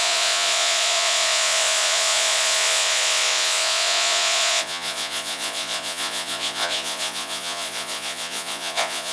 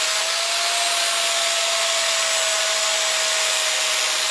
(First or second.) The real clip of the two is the second